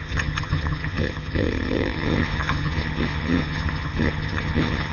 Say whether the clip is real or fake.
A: fake